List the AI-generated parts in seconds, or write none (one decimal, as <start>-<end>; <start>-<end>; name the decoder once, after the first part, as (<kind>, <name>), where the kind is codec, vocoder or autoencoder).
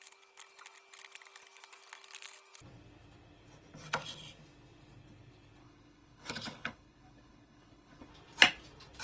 5.6-8.1 (codec, HILCodec)